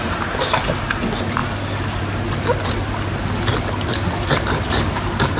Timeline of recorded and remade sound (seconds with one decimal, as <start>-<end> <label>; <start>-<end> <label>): 0.0-5.4 recorded